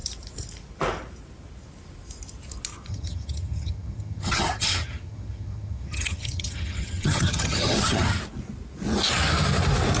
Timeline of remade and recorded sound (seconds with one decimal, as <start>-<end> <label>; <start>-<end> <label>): 0.0-2.9 recorded; 2.9-8.2 remade; 8.2-10.0 recorded